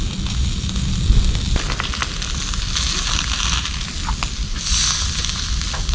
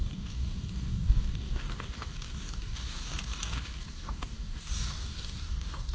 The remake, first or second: second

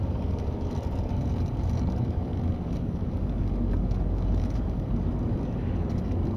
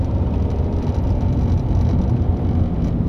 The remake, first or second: first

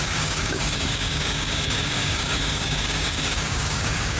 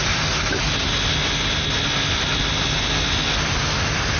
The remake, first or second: first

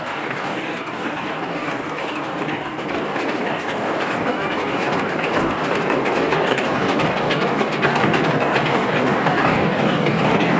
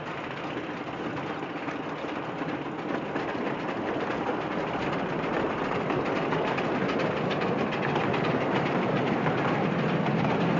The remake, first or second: first